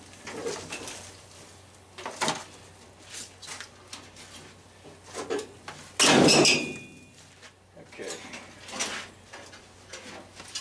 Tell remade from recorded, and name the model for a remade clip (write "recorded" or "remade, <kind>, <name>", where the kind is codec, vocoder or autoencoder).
recorded